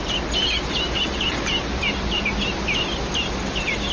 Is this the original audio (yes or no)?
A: yes